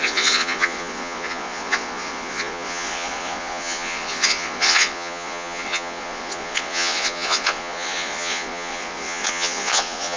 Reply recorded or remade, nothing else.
remade